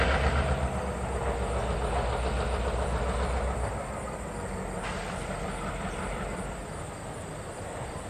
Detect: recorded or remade recorded